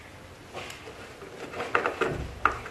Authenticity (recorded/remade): recorded